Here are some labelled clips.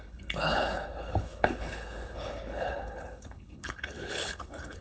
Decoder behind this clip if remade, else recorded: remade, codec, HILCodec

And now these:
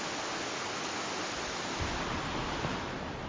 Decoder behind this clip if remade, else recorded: recorded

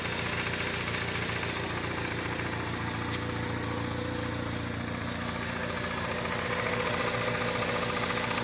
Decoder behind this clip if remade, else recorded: recorded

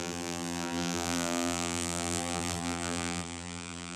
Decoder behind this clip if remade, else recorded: remade, vocoder, BigVGAN v2